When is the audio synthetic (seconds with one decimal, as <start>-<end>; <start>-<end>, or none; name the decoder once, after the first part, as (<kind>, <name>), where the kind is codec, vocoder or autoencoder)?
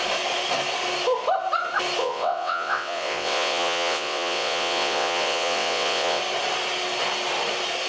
2.0-6.2 (vocoder, WaveNeXt)